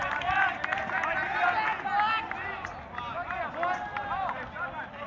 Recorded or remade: recorded